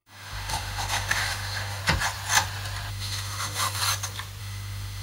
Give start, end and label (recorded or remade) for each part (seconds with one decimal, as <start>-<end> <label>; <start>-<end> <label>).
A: 0.0-1.8 remade; 1.8-2.9 recorded; 2.9-3.8 remade; 3.8-4.4 recorded; 4.4-5.0 remade